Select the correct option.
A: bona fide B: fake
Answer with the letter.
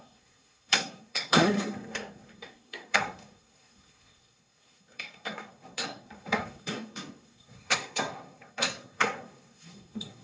B